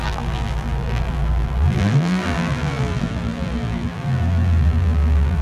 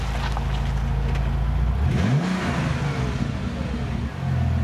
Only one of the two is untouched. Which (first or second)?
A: second